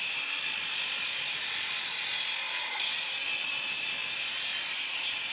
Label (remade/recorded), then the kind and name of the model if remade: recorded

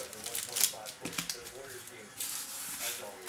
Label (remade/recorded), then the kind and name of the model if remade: recorded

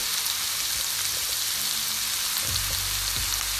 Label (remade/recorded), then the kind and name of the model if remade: recorded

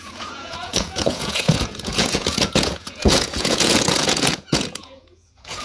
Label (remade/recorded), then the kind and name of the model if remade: remade, vocoder, Vocos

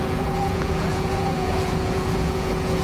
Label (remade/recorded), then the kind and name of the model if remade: remade, vocoder, Vocos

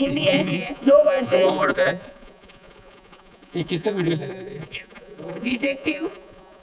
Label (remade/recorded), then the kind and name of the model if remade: remade, vocoder, Vocos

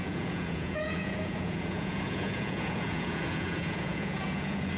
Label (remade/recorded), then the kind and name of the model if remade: remade, vocoder, Vocos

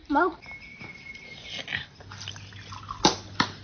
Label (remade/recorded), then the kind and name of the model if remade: recorded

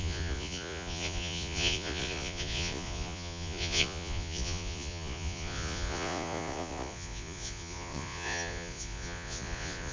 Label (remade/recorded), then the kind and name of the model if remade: remade, vocoder, Vocos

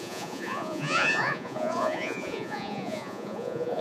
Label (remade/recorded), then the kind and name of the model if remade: remade, vocoder, Vocos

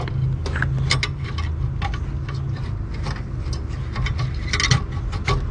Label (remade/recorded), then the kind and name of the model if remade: recorded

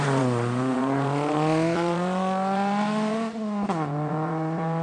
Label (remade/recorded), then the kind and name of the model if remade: remade, vocoder, Vocos